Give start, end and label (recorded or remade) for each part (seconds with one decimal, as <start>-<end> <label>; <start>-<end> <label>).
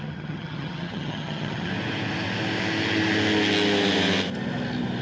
0.0-1.7 remade; 1.7-5.0 recorded